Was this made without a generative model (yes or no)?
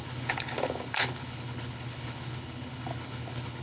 no